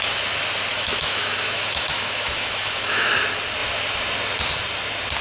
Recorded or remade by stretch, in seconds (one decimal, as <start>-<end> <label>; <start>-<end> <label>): 0.0-0.7 recorded; 0.7-3.1 remade; 3.1-5.2 recorded